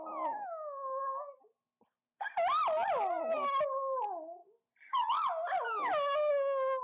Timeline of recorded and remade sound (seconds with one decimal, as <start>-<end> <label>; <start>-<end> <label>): 0.0-6.8 recorded